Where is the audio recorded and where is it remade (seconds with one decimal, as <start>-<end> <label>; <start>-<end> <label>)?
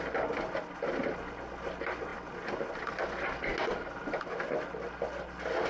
0.0-5.7 recorded